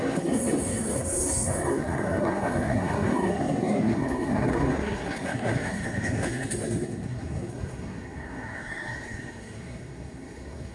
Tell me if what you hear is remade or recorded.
remade